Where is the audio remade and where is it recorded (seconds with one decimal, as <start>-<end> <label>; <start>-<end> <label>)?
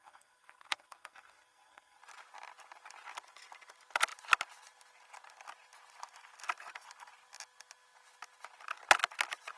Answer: 0.0-2.0 remade; 2.0-9.6 recorded